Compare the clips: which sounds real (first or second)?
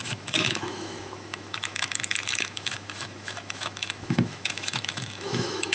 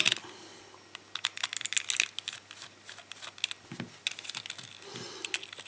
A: second